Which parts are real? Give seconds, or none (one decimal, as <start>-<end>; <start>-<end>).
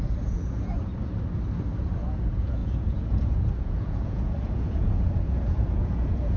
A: 0.9-1.8